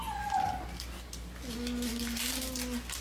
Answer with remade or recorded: recorded